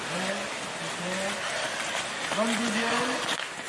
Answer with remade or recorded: recorded